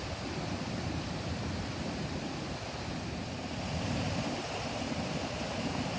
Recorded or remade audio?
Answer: recorded